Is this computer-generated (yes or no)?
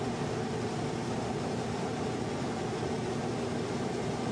no